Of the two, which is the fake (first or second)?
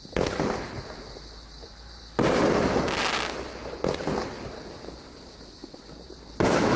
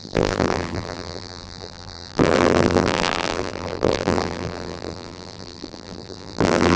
second